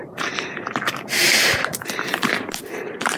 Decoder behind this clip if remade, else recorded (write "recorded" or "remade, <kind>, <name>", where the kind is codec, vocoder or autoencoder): remade, vocoder, BigVGAN v2